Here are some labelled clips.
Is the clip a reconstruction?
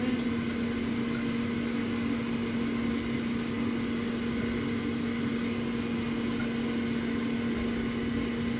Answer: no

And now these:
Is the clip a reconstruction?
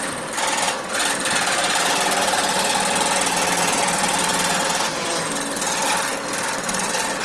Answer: no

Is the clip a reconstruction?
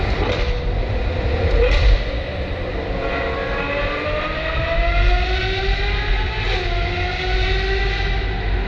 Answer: no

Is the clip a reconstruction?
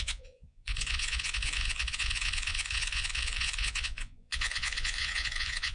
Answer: yes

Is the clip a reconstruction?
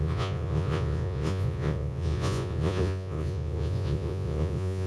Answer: yes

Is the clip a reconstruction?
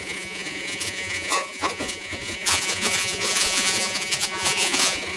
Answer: yes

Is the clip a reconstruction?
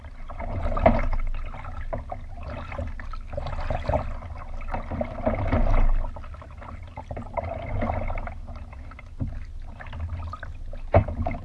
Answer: no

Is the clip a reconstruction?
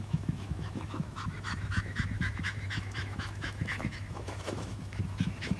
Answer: yes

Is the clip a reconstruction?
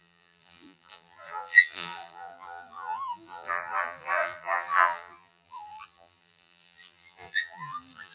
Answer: yes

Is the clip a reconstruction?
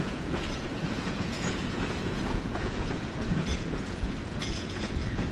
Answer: yes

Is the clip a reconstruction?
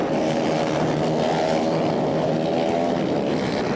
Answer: no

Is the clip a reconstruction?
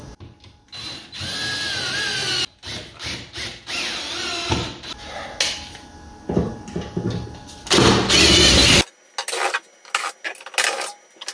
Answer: no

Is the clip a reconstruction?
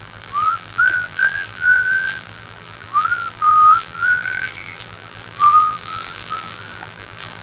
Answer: yes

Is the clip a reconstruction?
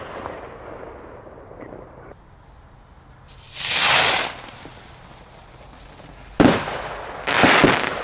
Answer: no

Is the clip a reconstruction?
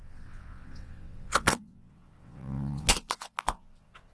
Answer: yes